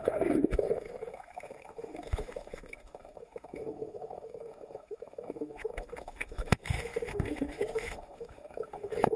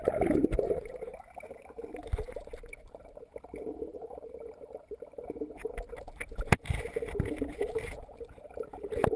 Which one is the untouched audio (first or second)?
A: second